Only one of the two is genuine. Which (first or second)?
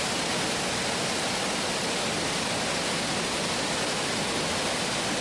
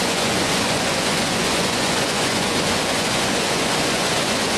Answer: first